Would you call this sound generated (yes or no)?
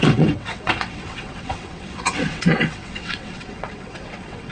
yes